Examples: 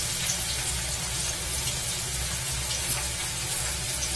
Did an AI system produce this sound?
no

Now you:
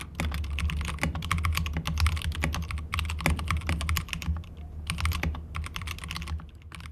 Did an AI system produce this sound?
no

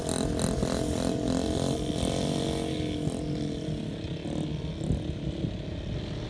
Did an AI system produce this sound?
no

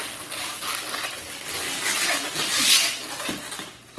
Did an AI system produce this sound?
no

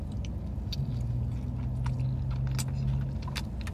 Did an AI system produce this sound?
no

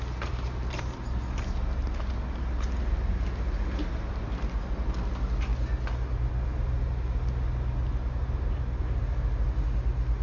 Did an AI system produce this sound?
no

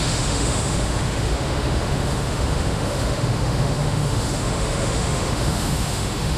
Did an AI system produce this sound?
yes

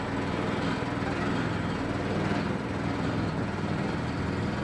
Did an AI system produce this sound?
no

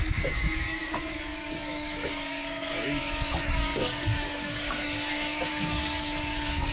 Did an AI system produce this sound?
yes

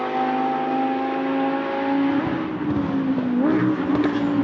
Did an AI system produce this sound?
no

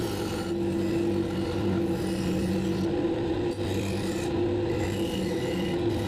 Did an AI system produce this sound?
no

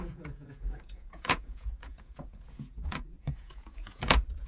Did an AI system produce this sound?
yes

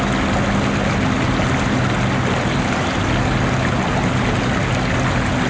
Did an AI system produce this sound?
no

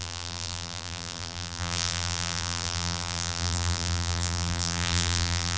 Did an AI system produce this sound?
yes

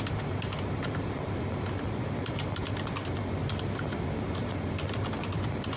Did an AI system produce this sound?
no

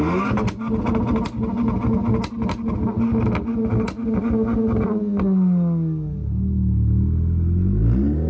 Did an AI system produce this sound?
no